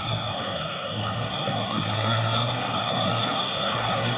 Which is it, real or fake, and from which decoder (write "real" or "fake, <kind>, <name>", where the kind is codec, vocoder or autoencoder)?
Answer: fake, codec, SNAC